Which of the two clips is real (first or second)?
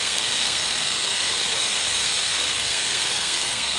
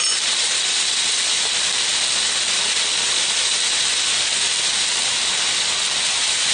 second